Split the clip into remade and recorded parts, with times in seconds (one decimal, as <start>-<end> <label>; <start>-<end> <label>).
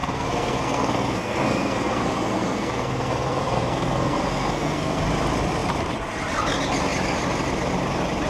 0.0-5.0 remade; 5.0-8.3 recorded